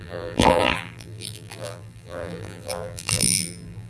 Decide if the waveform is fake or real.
fake